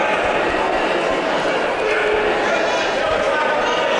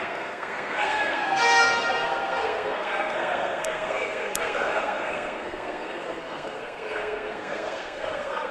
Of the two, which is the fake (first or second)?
second